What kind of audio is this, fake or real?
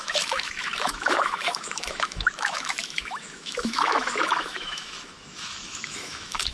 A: fake